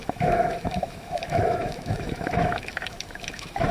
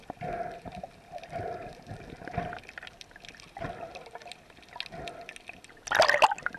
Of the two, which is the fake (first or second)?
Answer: first